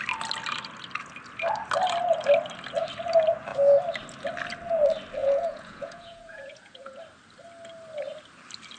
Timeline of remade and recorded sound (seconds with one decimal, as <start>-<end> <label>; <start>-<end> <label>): 0.0-5.2 recorded; 5.2-7.0 remade; 7.0-8.8 recorded